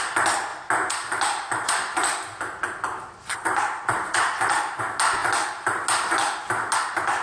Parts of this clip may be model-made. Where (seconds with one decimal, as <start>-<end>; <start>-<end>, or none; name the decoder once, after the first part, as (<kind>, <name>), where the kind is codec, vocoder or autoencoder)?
none